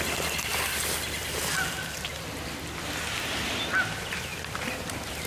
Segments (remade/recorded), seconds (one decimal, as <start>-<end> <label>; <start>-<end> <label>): 0.0-4.3 recorded; 4.3-5.3 remade